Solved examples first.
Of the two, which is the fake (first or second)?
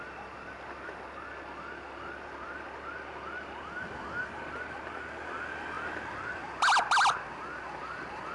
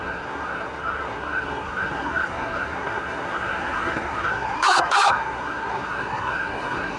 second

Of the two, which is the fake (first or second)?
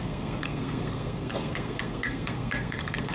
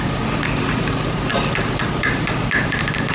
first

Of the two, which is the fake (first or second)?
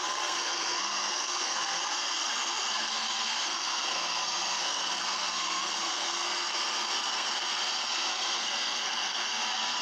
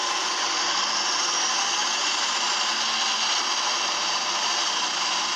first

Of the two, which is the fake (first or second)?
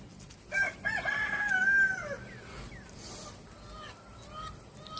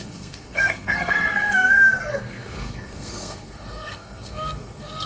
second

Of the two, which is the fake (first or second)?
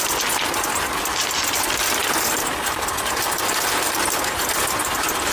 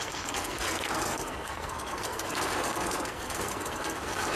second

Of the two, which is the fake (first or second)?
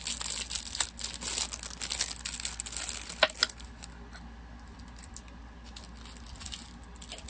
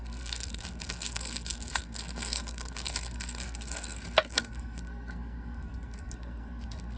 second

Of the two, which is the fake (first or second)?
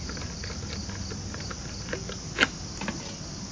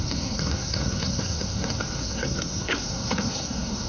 second